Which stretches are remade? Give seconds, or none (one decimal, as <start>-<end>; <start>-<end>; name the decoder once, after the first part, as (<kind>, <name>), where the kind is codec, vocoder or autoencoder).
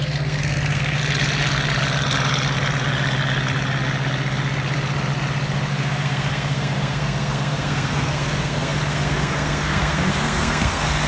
0.0-1.0 (codec, SNAC); 5.7-11.1